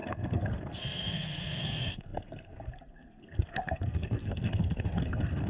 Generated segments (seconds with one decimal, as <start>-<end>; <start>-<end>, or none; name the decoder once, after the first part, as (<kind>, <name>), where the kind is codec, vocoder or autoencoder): 0.0-5.5 (codec, SNAC)